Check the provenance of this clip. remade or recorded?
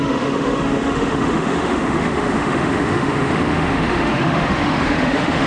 remade